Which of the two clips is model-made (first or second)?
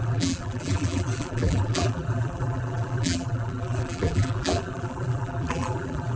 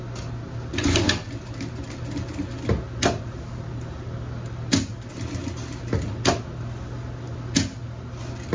first